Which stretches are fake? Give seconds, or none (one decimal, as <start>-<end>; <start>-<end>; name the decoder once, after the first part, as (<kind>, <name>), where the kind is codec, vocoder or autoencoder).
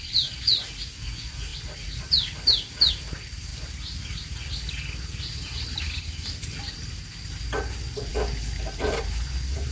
none